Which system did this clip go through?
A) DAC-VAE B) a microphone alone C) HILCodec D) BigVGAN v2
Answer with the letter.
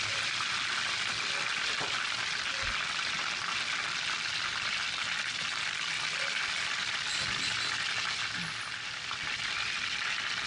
B